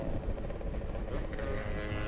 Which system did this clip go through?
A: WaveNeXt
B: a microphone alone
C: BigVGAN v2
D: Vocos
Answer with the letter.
B